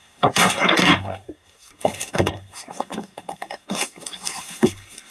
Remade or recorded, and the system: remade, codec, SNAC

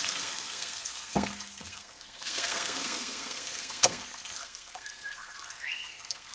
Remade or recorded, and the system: remade, codec, SNAC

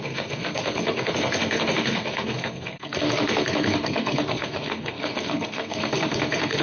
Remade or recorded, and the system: remade, codec, SNAC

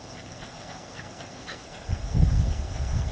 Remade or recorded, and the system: remade, codec, SNAC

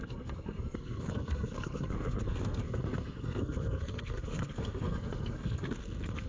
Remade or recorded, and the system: remade, codec, SNAC